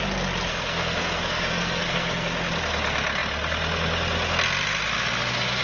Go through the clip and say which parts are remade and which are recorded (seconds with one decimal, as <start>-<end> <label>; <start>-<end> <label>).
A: 0.0-0.5 recorded; 0.5-2.3 remade; 2.3-5.6 recorded